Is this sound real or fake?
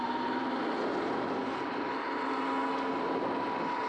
real